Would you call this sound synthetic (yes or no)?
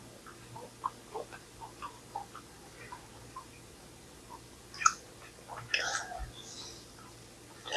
no